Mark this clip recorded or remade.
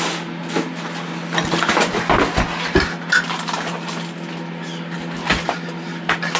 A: recorded